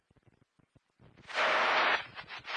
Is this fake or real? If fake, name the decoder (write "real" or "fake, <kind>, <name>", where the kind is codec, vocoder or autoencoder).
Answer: real